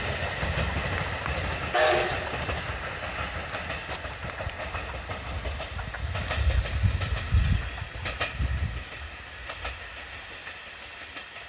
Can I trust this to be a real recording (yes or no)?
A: yes